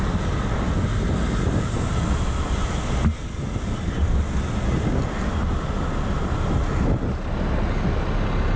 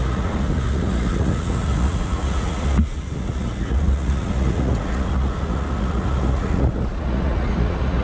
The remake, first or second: second